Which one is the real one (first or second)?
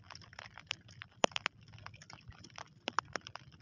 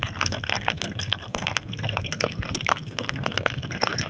first